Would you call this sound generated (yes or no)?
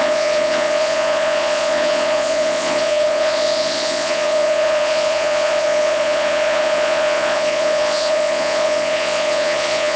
yes